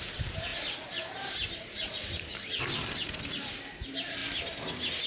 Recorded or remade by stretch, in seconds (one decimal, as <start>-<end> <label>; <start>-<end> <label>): 0.0-4.2 remade; 4.2-5.1 recorded